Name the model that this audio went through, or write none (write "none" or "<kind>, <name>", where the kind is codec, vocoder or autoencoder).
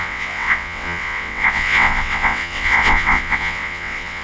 vocoder, WaveNeXt